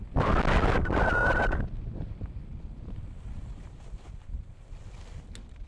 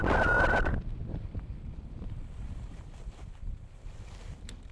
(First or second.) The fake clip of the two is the second